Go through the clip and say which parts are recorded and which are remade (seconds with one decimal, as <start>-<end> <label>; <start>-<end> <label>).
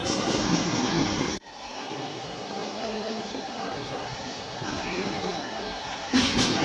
0.0-6.6 remade